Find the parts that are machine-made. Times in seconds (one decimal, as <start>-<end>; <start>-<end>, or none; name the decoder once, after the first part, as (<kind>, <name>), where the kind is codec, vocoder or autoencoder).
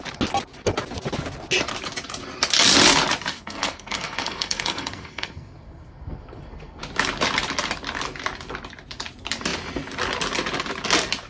3.3-6.8 (codec, SNAC)